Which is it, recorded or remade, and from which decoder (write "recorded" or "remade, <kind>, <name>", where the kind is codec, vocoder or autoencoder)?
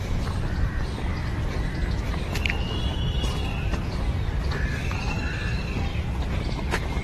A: recorded